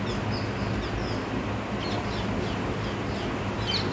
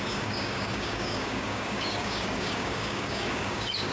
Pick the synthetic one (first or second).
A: second